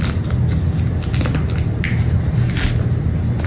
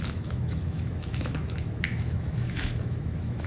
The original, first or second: first